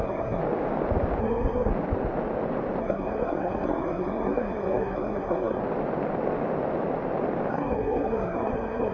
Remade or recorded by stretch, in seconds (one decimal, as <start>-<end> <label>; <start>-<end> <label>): 0.0-0.4 remade; 0.4-1.2 recorded; 1.2-1.7 remade; 1.7-2.8 recorded; 2.8-5.6 remade; 5.6-7.5 recorded; 7.5-8.9 remade